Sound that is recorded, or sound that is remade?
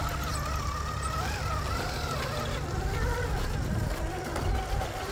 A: recorded